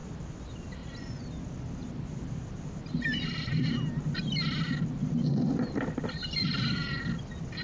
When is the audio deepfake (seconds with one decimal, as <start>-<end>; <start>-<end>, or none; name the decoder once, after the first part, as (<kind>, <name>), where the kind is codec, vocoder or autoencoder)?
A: 0.0-1.4 (vocoder, BigVGAN v2); 1.8-3.7; 5.0-7.0